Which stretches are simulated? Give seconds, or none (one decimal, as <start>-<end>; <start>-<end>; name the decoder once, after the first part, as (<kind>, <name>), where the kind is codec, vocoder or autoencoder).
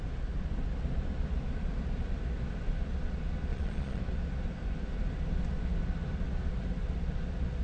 3.5-4.0 (vocoder, Vocos)